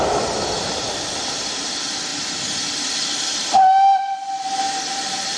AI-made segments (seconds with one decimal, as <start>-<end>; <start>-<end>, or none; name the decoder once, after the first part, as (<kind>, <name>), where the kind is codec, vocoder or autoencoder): none